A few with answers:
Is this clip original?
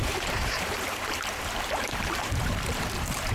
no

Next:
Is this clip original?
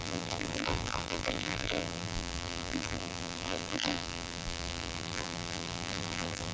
no